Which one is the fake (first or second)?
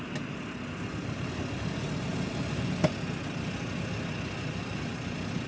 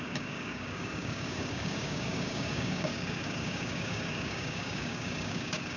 second